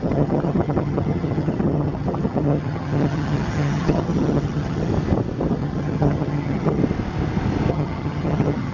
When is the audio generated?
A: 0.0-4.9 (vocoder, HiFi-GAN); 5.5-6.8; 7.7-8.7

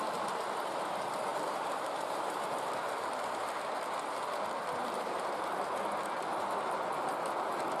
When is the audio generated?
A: 1.3-2.4 (vocoder, BigVGAN v2); 4.8-5.8